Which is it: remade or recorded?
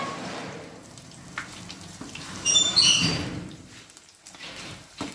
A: remade